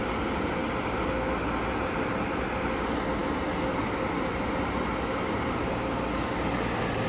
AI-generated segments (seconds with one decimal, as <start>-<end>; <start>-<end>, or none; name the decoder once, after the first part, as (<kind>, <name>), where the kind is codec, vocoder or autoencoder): none